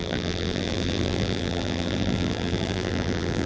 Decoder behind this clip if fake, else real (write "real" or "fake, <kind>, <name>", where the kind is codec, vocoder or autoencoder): fake, vocoder, BigVGAN v2